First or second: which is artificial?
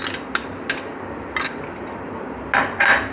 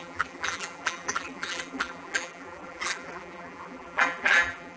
second